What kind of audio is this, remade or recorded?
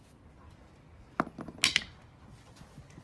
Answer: recorded